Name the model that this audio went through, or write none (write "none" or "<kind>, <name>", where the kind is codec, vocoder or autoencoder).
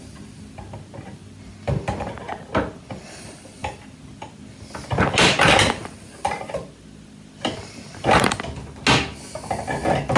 none